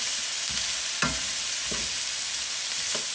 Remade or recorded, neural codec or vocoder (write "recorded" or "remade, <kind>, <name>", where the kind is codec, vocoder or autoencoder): recorded